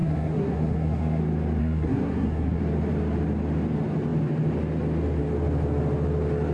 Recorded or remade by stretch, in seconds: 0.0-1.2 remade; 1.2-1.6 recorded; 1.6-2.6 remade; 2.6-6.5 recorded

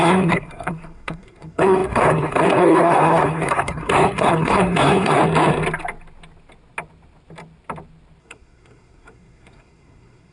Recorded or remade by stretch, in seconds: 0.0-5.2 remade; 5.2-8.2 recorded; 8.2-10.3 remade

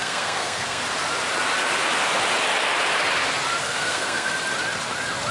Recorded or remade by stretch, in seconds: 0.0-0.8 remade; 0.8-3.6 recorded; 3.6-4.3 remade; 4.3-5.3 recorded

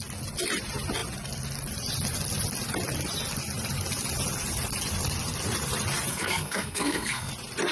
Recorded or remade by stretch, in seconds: 0.0-6.1 recorded; 6.1-7.3 remade; 7.3-7.7 recorded

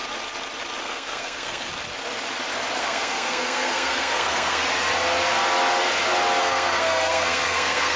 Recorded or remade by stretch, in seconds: 0.0-0.8 recorded; 0.8-1.7 remade; 1.7-2.8 recorded; 2.8-4.6 remade; 4.6-6.4 recorded; 6.4-8.0 remade